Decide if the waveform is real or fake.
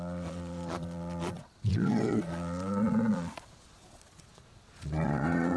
fake